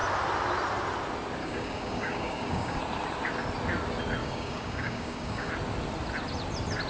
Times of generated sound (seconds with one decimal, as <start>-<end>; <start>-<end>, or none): 1.4-2.8; 4.2-5.5